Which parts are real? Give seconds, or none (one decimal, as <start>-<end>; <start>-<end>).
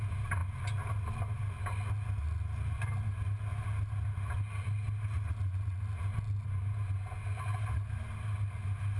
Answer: 0.0-9.0